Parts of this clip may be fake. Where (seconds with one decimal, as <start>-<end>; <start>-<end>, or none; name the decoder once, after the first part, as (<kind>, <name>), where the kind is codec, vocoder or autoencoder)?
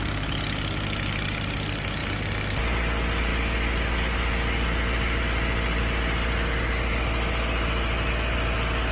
none